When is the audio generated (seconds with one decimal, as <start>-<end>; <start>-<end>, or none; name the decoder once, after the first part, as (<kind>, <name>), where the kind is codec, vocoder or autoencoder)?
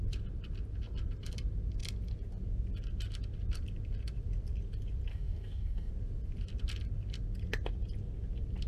5.1-5.9 (codec, DAC)